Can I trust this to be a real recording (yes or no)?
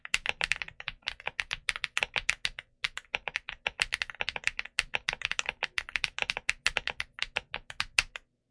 yes